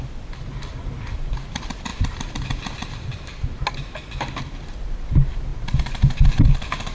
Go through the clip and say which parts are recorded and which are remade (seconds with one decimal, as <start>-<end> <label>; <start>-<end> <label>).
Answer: 0.0-5.5 recorded; 5.5-6.3 remade; 6.3-6.9 recorded

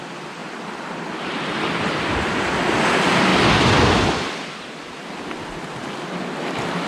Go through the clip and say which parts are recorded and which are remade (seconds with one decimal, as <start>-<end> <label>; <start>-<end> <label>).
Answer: 0.0-6.9 recorded

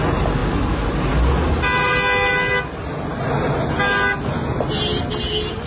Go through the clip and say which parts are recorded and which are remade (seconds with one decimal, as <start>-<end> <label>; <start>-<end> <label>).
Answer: 0.0-5.7 recorded

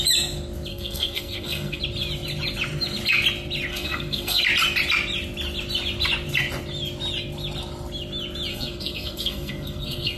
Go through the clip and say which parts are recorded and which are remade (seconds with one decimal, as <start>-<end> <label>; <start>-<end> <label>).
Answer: 0.0-0.7 recorded; 0.7-1.8 remade; 1.8-3.7 recorded; 3.7-4.4 remade; 4.4-8.5 recorded; 8.5-10.2 remade

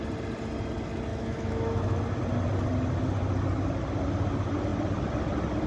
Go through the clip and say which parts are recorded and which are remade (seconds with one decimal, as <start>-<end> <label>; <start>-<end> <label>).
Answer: 0.0-1.1 recorded; 1.1-2.0 remade; 2.0-5.7 recorded